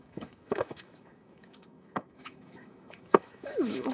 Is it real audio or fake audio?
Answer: fake